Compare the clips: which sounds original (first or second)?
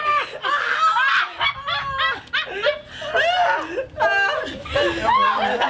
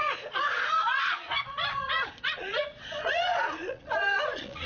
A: first